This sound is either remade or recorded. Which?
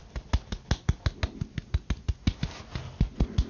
recorded